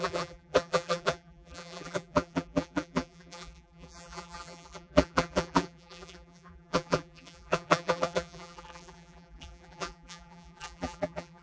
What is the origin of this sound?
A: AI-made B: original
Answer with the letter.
A